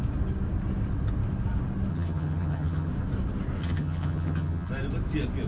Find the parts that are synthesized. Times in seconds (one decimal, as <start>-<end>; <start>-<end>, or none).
1.9-2.9; 3.6-4.7